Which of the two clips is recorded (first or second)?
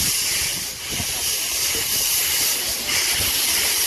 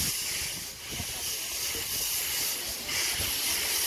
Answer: second